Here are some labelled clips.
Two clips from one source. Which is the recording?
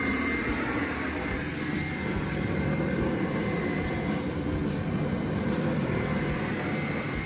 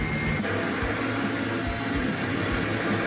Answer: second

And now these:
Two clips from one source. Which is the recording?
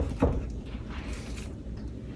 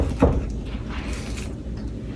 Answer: second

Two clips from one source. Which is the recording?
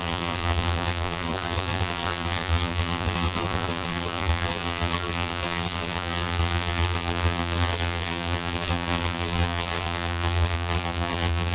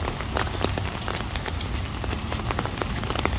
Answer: second